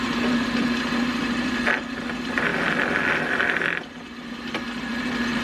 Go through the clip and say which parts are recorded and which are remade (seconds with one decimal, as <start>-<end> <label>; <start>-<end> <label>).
0.0-2.5 remade; 2.5-4.3 recorded; 4.3-5.4 remade